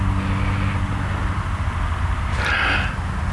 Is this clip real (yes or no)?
yes